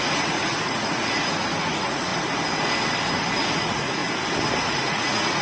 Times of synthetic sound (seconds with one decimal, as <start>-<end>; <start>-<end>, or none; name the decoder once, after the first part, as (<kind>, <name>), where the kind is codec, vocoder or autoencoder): 0.0-2.1 (vocoder, Vocos); 3.5-4.0; 4.7-5.4